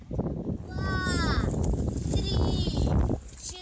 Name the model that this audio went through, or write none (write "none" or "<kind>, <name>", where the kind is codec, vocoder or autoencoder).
none